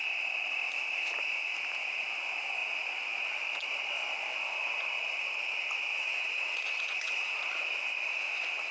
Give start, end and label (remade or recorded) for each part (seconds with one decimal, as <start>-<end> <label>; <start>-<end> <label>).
0.0-5.9 recorded; 5.9-7.4 remade; 7.4-8.7 recorded